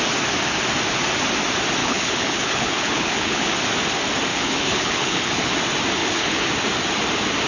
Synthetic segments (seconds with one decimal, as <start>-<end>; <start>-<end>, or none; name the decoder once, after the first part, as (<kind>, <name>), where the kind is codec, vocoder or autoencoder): 1.8-3.5 (codec, HILCodec); 4.3-5.5; 6.0-6.5